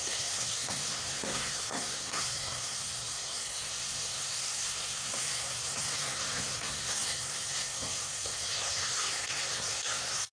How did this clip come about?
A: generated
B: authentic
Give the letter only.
A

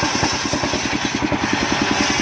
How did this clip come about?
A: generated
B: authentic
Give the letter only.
B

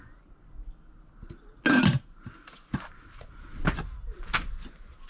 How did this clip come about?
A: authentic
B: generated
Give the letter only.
A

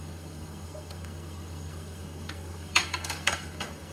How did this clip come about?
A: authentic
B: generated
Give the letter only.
B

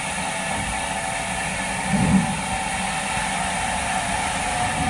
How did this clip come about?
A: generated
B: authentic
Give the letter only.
B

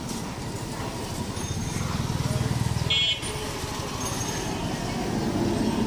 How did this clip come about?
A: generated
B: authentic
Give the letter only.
B